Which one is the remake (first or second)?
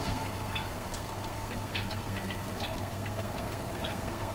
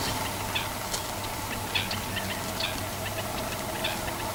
first